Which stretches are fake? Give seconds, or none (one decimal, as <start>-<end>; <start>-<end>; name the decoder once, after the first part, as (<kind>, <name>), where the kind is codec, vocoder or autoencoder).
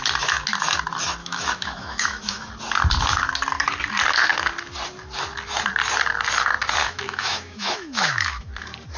1.2-2.5 (autoencoder, DAC-VAE); 6.8-8.5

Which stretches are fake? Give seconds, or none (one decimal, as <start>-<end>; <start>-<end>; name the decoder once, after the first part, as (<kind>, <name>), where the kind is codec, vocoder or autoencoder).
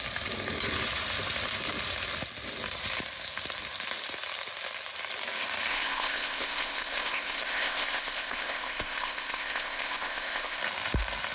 5.7-10.6 (codec, ZipCodec)